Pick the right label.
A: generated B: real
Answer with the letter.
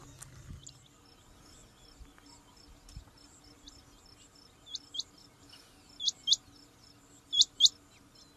B